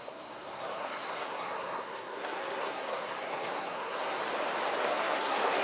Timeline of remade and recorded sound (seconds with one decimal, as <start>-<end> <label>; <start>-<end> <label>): 0.0-4.2 remade; 4.2-4.8 recorded; 4.8-5.6 remade